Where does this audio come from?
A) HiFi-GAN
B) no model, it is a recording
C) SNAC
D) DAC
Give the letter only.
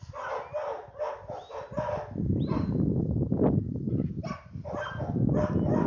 B